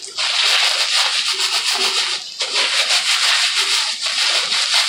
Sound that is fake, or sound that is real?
real